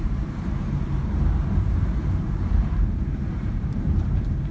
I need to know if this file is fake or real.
fake